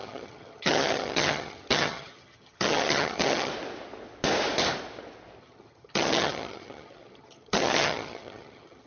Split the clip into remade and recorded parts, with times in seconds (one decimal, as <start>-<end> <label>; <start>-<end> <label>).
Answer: 0.0-3.5 remade; 3.5-5.4 recorded; 5.4-8.9 remade